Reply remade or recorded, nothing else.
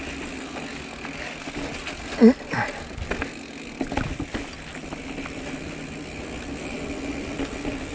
recorded